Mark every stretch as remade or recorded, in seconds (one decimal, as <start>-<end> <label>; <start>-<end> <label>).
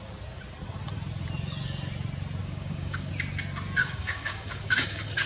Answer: 0.0-2.4 recorded; 2.4-3.1 remade; 3.1-3.8 recorded; 3.8-5.3 remade